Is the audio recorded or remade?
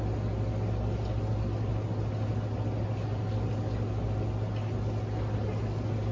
recorded